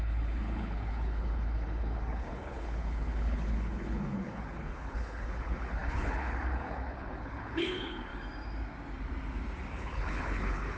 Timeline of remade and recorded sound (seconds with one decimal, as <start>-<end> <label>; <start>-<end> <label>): 0.0-8.1 remade; 8.1-9.7 recorded; 9.7-10.8 remade